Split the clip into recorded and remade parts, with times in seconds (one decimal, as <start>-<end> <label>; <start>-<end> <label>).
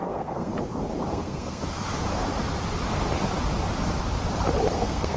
0.0-0.5 remade; 0.5-1.1 recorded; 1.1-1.6 remade; 1.6-4.7 recorded; 4.7-5.2 remade